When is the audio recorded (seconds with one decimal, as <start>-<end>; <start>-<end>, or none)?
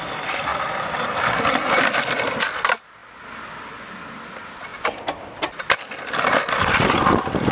0.5-2.6; 3.0-4.3; 4.7-6.5